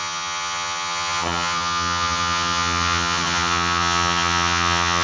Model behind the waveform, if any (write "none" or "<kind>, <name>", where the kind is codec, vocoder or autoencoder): vocoder, HiFi-GAN